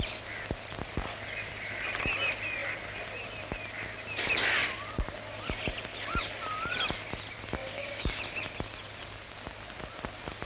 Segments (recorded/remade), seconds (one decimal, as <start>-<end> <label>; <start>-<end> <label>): 0.0-7.6 recorded; 7.6-8.2 remade; 8.2-10.4 recorded